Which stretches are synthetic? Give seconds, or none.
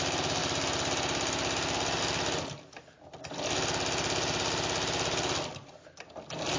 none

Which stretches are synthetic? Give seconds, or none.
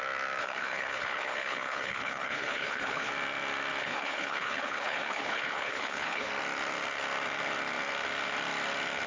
0.4-3.1; 3.8-6.3